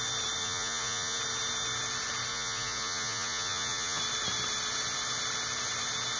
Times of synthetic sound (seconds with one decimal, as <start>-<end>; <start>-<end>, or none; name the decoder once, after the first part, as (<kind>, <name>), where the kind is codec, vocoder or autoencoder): 0.4-1.2 (vocoder, Vocos); 2.3-4.0

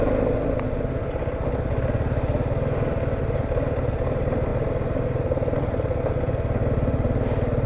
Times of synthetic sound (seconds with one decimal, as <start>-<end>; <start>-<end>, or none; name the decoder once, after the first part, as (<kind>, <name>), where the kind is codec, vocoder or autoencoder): none

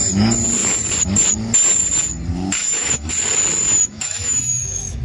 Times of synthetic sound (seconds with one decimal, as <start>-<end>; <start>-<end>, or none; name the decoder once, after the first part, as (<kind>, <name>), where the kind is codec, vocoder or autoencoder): 2.6-3.1 (autoencoder, DAC-VAE); 3.8-5.0

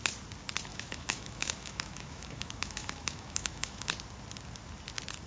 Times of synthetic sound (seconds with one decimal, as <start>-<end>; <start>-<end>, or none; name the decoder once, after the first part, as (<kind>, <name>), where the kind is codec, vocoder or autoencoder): 0.7-3.9 (autoencoder, DAC-VAE)